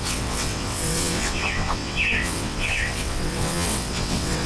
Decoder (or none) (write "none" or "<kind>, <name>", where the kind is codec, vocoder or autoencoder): vocoder, WaveNeXt